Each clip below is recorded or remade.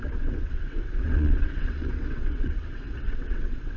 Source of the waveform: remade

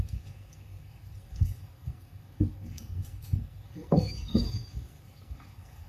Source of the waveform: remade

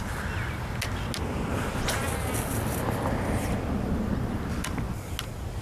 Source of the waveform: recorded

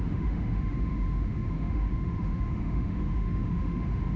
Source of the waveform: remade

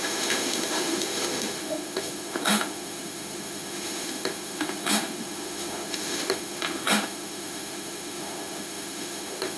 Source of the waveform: remade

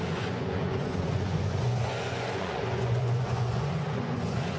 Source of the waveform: remade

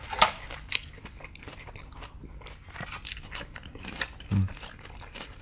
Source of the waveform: recorded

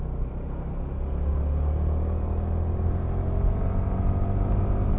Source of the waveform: recorded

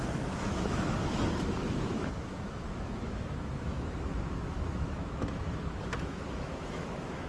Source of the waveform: remade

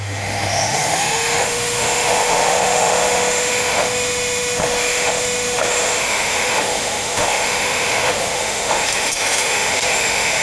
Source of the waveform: remade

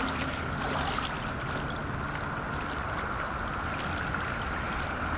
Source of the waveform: recorded